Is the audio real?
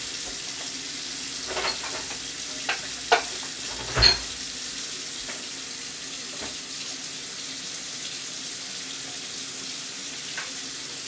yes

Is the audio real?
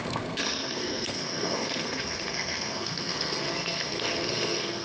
no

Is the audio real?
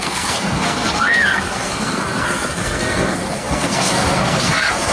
no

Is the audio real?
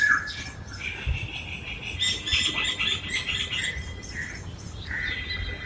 yes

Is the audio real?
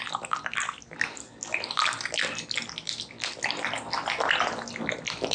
yes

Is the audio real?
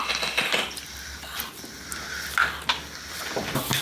yes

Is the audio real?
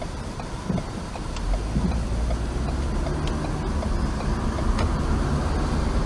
yes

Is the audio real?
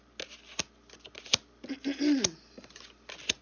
yes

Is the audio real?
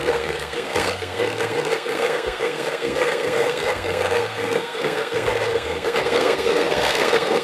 no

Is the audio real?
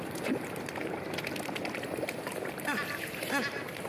yes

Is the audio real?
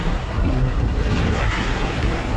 no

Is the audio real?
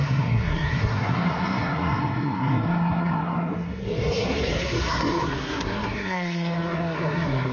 no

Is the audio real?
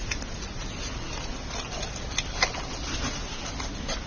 yes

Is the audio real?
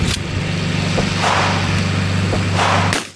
yes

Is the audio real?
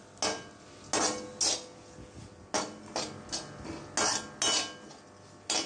yes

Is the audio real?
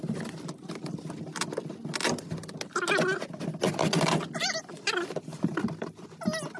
yes